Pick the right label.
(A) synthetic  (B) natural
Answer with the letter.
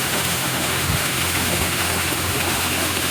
A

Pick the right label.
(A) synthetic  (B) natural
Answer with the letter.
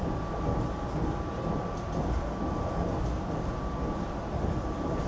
B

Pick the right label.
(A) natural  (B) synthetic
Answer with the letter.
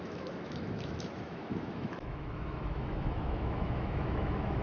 B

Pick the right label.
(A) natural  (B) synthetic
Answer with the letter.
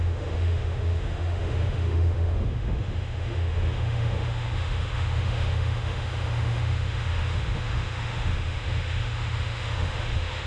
B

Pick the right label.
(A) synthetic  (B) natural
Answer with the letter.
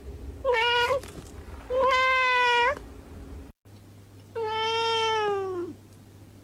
B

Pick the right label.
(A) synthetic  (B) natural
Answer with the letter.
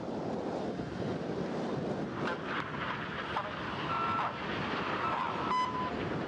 B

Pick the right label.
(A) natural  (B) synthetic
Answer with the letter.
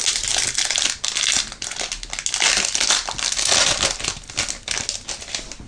A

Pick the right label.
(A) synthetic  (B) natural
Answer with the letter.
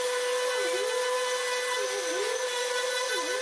B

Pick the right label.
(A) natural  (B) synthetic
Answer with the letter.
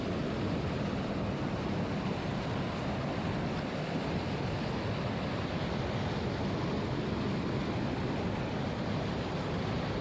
A